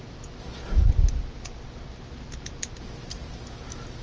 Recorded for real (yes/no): yes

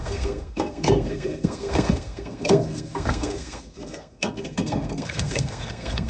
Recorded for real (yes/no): no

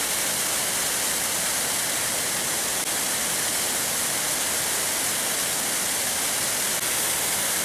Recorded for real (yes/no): yes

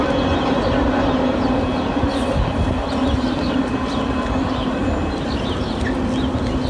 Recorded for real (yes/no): yes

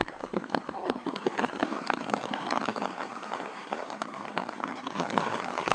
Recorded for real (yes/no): no